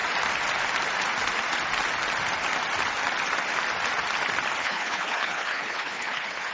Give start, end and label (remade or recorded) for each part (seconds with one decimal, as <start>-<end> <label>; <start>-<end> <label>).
0.0-4.6 recorded; 4.6-6.5 remade